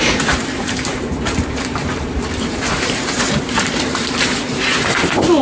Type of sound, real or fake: fake